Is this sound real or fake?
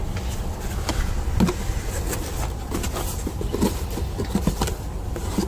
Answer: real